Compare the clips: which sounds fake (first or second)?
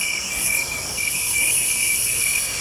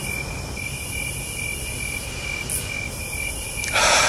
first